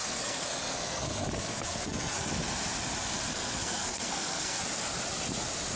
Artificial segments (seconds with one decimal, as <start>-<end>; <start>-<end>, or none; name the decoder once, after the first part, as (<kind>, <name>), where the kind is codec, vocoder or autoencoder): 0.0-2.3 (codec, SNAC); 3.3-4.6